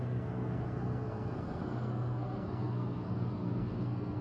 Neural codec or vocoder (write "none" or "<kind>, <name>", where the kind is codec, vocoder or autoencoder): codec, SNAC